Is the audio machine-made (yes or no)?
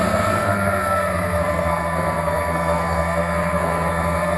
yes